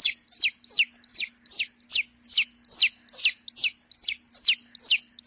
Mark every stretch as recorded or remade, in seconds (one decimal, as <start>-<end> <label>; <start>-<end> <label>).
0.0-5.3 recorded